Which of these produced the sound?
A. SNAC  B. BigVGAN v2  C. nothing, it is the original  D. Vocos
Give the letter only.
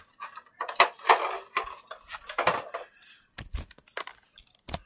C